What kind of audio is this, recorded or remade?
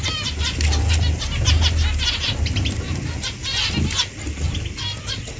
recorded